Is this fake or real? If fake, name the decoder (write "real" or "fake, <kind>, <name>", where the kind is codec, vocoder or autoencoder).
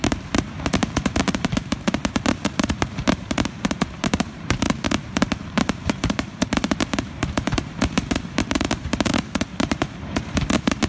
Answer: fake, vocoder, BigVGAN v2